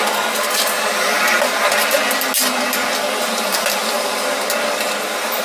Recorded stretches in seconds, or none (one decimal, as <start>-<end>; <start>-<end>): 0.0-5.4